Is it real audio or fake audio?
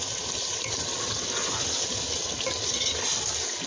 real